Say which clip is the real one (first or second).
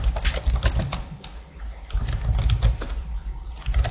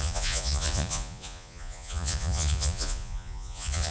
first